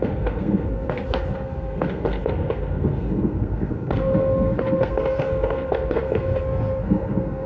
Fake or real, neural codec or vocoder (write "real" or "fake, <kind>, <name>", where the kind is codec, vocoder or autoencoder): fake, codec, SNAC